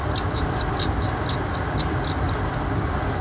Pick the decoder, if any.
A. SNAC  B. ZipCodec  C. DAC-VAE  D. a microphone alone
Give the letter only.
D